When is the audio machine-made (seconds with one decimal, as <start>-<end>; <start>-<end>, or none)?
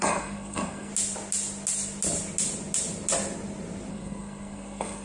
0.0-0.9; 3.9-5.0